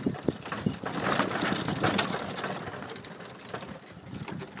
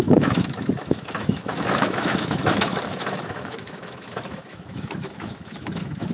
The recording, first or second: first